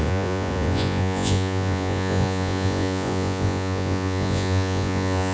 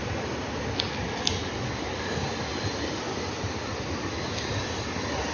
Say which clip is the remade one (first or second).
first